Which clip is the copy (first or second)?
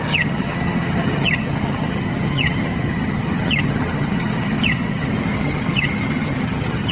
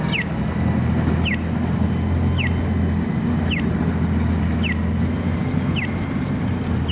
first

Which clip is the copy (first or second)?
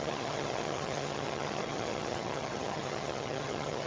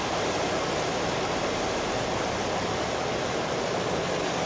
first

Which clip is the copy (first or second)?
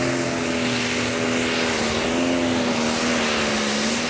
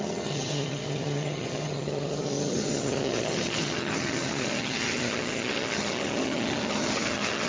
second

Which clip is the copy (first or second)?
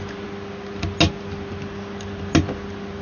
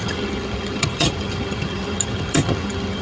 second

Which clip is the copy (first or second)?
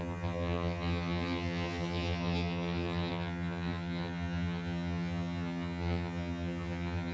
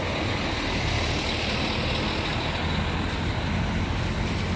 first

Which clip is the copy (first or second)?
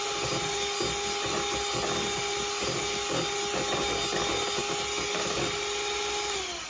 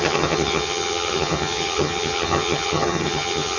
second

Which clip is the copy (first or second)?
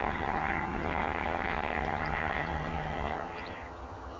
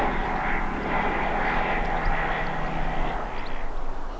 first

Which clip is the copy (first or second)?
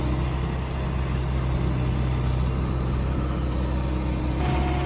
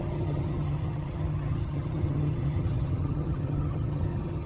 second